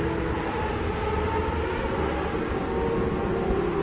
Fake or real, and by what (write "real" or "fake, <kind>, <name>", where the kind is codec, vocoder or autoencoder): real